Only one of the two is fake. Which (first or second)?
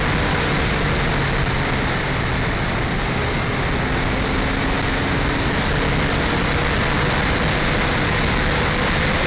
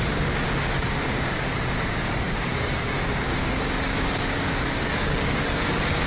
second